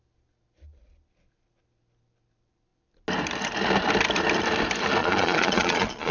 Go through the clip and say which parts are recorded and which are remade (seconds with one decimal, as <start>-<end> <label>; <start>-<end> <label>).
0.0-5.0 recorded; 5.0-6.1 remade